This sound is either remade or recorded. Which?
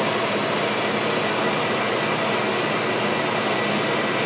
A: recorded